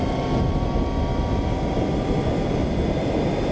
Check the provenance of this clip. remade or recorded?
recorded